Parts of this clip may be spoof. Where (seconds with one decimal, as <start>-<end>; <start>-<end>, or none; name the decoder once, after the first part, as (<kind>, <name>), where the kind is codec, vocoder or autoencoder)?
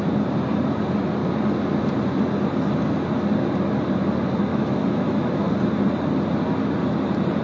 4.5-5.5 (autoencoder, DAC-VAE)